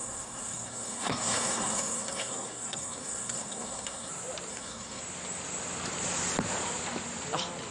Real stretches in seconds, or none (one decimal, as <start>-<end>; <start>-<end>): 4.1-4.5; 5.0-7.7